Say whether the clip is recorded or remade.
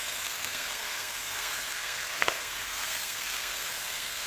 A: remade